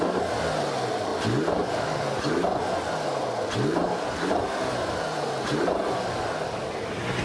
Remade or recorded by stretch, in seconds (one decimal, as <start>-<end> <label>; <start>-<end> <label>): 0.0-7.2 recorded